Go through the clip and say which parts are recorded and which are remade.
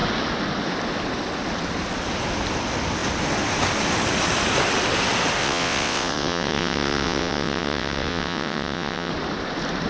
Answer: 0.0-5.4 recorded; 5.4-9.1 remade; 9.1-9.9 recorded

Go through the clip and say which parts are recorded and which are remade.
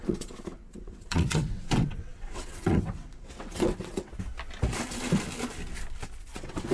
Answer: 0.0-4.1 remade; 4.1-6.2 recorded; 6.2-6.7 remade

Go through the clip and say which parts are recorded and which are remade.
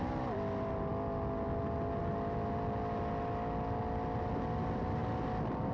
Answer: 0.0-5.7 recorded